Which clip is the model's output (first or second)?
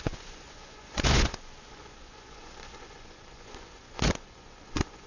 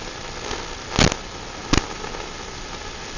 first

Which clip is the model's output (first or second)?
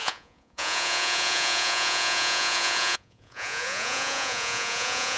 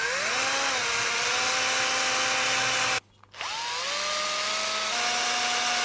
first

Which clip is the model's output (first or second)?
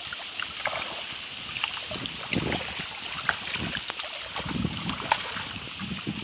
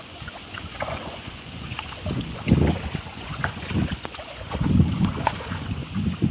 second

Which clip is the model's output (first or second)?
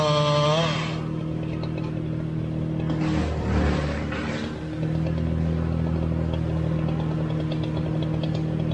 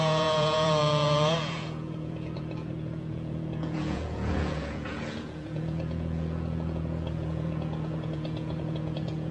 second